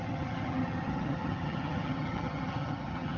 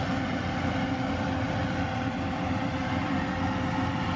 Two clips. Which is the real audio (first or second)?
second